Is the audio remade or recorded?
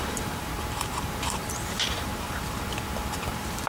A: remade